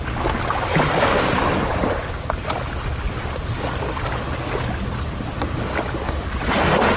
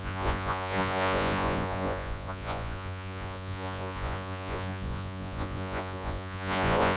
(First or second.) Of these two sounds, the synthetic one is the second